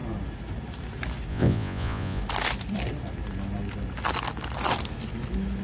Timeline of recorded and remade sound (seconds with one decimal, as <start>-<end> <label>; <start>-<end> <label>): 0.0-1.3 recorded; 1.3-2.2 remade; 2.2-5.6 recorded